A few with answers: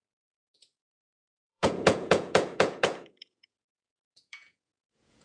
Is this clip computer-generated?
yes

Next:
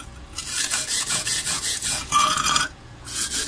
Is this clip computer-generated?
yes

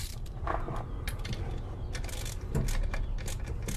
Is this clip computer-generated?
no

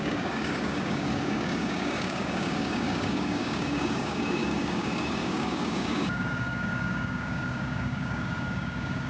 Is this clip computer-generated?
yes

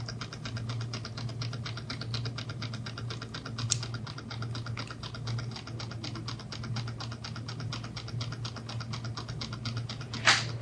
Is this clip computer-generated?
no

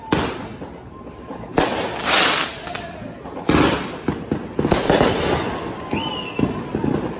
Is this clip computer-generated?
no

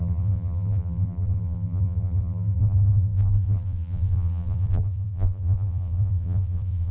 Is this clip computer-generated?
yes